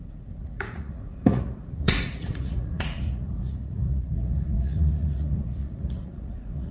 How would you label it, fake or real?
fake